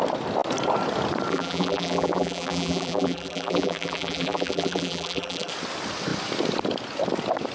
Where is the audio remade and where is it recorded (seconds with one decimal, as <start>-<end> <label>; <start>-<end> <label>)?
0.0-1.3 recorded; 1.3-5.5 remade; 5.5-7.5 recorded